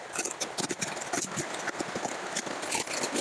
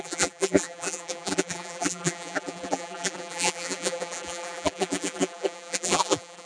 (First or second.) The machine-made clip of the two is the second